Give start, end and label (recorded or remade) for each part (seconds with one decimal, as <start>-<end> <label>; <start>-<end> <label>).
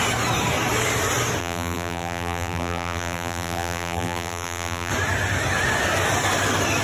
0.0-1.4 recorded; 1.4-4.9 remade; 4.9-6.8 recorded